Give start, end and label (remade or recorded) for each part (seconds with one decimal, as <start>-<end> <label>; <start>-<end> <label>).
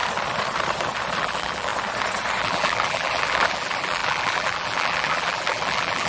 0.0-1.2 recorded; 1.2-1.7 remade; 1.7-2.4 recorded; 2.4-6.1 remade